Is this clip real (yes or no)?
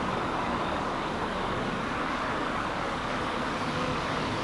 no